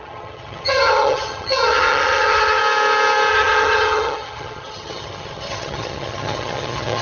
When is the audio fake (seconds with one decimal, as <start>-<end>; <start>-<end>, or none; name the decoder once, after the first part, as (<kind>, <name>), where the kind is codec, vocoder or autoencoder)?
0.0-2.6 (vocoder, HiFi-GAN); 3.3-7.0